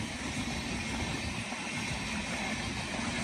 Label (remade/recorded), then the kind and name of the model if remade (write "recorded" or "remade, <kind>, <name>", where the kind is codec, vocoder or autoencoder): recorded